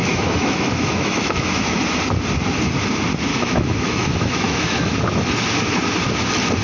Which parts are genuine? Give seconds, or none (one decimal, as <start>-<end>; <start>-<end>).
1.8-3.3; 5.0-6.6